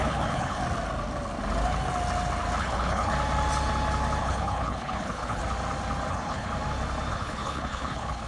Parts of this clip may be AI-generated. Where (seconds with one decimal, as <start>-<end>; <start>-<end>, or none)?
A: 0.0-0.6; 2.6-3.1; 4.2-5.4; 6.1-6.5; 7.1-8.3

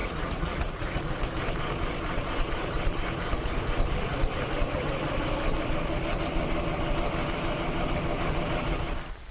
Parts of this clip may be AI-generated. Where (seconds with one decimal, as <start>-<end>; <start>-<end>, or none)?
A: 0.0-1.0